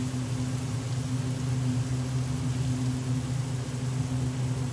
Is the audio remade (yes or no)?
no